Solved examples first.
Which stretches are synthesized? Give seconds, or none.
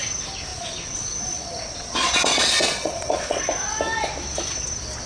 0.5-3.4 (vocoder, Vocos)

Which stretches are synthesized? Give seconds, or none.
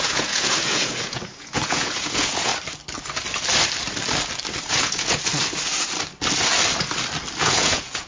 0.0-2.5 (vocoder, Vocos); 4.7-5.3; 7.4-8.1